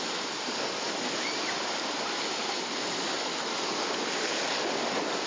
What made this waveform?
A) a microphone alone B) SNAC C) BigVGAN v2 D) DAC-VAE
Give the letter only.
A